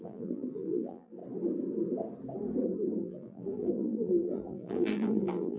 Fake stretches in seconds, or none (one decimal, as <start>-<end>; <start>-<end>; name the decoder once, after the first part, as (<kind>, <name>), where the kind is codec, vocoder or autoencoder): 0.0-1.2 (vocoder, BigVGAN v2); 3.0-5.6